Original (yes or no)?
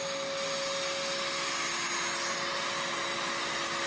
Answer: yes